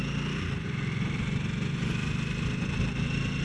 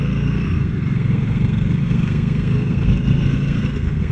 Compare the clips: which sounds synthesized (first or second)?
second